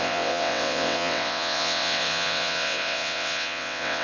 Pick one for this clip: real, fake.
fake